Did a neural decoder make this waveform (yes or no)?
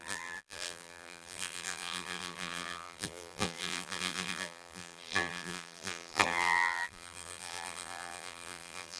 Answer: yes